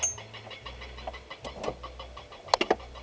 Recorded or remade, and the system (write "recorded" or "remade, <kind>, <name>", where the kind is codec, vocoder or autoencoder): recorded